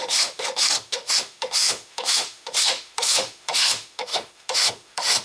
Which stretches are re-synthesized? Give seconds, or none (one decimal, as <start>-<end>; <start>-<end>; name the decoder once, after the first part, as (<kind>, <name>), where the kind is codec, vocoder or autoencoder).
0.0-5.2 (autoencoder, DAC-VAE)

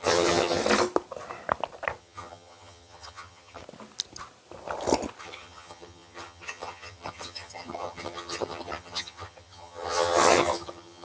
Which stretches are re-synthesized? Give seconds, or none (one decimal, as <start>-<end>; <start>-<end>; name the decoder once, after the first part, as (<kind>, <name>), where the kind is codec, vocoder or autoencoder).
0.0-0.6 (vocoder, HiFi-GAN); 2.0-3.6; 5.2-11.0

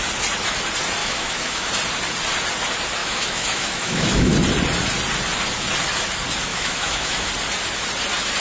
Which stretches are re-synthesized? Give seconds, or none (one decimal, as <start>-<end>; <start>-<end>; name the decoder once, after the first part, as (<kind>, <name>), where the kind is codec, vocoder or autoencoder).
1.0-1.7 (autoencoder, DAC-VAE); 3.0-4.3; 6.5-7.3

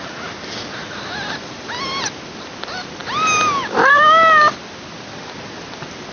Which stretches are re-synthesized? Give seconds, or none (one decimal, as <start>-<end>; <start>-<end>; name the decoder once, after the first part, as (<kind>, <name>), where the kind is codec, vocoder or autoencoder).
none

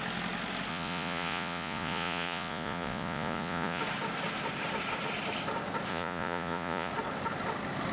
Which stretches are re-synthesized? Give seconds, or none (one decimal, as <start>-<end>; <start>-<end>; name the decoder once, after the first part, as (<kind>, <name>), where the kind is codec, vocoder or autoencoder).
0.7-3.8 (vocoder, Vocos); 5.9-6.9